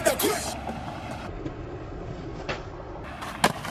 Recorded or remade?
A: recorded